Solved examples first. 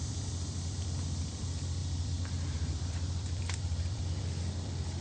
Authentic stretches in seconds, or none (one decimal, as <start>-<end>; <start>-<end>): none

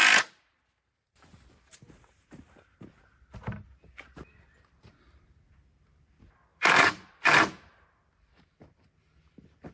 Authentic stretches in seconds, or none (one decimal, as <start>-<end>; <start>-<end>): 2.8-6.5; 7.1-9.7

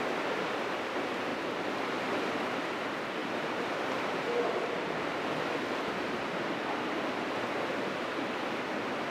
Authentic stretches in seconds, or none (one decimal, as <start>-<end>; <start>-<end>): 0.0-1.3; 2.3-3.2; 8.4-9.1